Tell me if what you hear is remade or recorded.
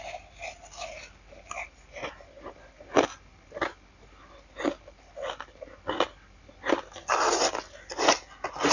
recorded